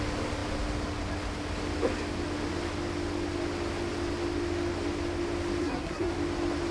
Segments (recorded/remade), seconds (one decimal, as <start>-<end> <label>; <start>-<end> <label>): 0.0-5.6 recorded; 5.6-6.1 remade; 6.1-6.7 recorded